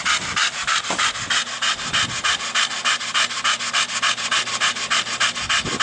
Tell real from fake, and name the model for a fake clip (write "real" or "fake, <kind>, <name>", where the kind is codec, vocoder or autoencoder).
real